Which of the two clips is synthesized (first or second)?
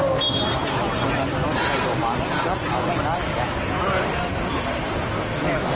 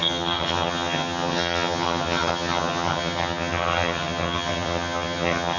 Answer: second